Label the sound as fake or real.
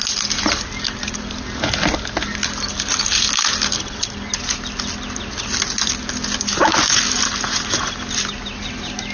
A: real